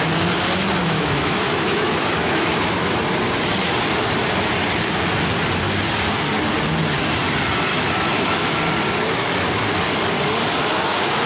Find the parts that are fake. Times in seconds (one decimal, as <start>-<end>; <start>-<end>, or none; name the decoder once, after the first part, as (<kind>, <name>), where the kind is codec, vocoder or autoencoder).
0.8-2.9 (autoencoder, DAC-VAE); 7.7-8.6